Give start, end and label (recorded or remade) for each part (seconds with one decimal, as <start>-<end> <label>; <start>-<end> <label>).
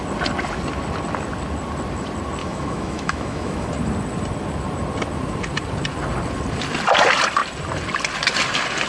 0.0-2.4 recorded; 2.4-3.7 remade; 3.7-8.9 recorded